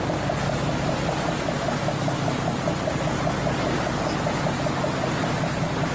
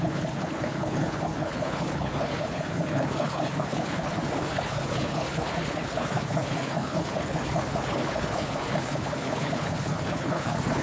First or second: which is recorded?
first